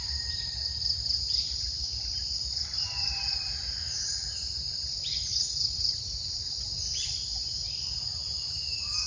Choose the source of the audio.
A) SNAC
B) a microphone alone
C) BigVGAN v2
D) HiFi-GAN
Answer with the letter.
C